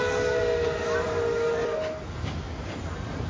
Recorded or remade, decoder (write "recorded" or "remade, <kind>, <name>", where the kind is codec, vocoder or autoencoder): recorded